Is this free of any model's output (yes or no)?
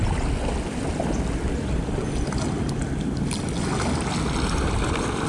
yes